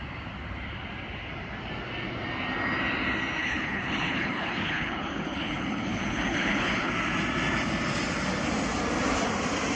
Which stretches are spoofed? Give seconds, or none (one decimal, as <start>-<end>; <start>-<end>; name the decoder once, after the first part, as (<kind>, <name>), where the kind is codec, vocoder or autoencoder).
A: 3.4-6.9 (codec, HILCodec)